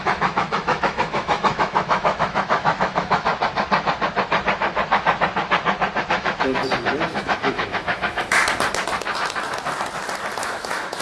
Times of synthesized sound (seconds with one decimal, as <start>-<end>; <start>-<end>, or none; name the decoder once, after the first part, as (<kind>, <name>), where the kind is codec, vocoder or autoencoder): 0.0-3.3 (autoencoder, DAC-VAE); 6.0-6.6; 7.2-8.4; 10.4-11.0